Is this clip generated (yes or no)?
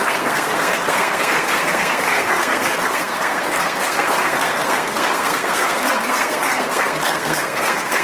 yes